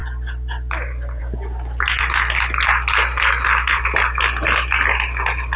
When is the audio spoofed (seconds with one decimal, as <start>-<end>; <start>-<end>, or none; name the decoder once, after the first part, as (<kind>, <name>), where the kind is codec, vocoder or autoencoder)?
none